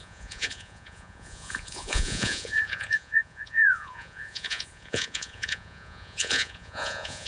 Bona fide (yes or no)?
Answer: no